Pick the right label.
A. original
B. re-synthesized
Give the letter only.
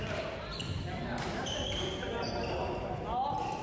A